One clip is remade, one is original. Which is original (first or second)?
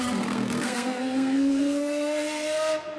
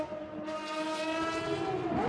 second